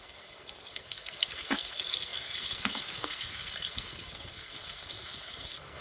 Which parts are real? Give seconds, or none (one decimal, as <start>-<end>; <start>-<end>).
none